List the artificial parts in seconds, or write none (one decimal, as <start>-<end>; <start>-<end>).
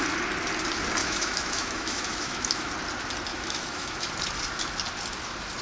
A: 1.0-2.7; 3.3-4.1